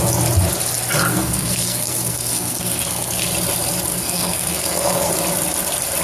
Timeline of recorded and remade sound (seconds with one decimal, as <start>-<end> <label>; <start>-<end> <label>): 0.0-1.1 recorded; 1.1-3.2 remade; 3.2-3.9 recorded; 3.9-5.1 remade; 5.1-6.0 recorded